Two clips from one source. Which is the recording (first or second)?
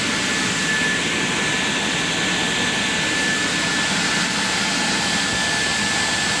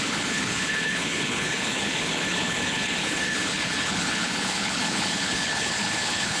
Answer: first